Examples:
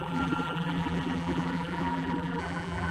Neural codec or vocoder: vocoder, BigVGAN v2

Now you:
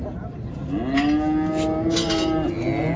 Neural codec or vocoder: none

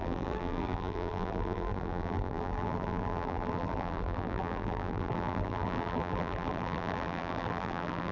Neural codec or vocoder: vocoder, BigVGAN v2